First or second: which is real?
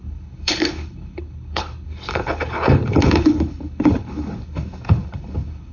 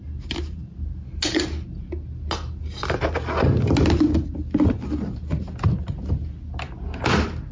second